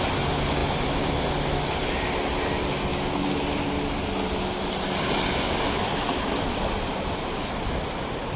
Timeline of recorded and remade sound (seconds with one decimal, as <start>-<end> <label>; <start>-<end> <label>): 0.0-8.4 recorded